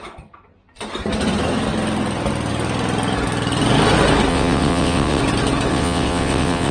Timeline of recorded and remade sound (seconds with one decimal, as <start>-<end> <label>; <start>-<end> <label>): 0.0-4.3 recorded; 4.3-5.2 remade; 5.2-5.7 recorded; 5.7-6.7 remade